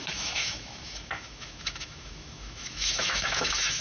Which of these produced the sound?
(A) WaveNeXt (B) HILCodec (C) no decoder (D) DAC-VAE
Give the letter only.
D